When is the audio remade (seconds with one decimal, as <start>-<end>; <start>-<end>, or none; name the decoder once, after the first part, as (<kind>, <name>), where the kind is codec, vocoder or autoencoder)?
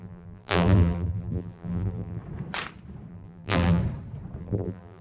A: 0.0-2.2 (vocoder, BigVGAN v2); 3.1-3.8; 4.4-5.0